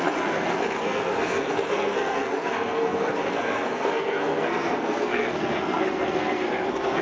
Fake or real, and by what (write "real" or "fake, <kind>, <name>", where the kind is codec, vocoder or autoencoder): fake, codec, SNAC